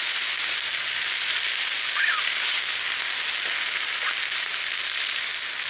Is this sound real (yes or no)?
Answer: yes